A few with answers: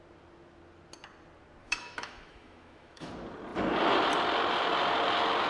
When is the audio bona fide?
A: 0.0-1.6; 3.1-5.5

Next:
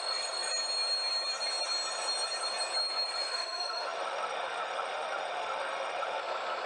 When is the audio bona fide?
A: 0.0-3.3; 6.2-6.7

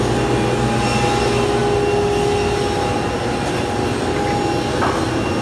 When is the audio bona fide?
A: 0.0-5.4

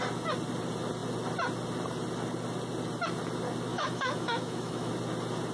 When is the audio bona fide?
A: 0.0-3.7; 4.9-5.5

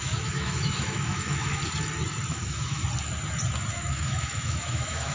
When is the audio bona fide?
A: 1.6-2.3; 2.8-3.7

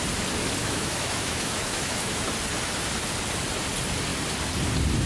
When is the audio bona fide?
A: 0.0-0.6; 2.2-5.1